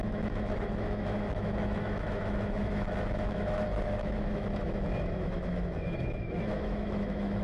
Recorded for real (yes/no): no